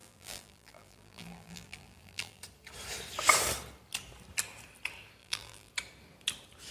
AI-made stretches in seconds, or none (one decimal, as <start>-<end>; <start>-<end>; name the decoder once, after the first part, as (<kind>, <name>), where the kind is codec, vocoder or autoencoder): 0.0-2.4 (vocoder, BigVGAN v2); 5.2-5.7